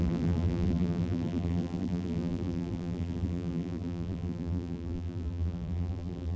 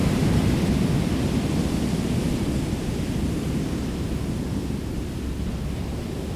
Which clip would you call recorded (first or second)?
second